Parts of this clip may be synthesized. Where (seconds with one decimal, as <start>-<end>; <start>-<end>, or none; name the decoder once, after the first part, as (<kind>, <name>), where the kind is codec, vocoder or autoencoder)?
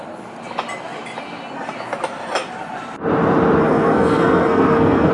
3.6-5.1 (codec, SNAC)